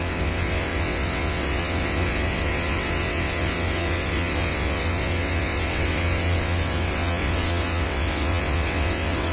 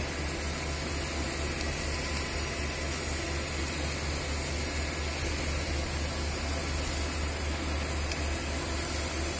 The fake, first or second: first